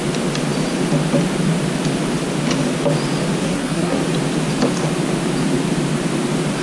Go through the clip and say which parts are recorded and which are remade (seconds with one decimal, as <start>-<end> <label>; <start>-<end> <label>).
0.0-3.4 recorded; 3.4-4.0 remade; 4.0-6.6 recorded